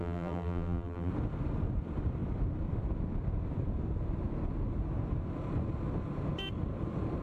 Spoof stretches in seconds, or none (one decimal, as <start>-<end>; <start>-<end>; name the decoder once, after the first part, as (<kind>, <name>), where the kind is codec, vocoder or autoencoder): 0.0-1.1 (vocoder, BigVGAN v2)